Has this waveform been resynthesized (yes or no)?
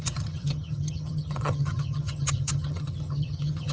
yes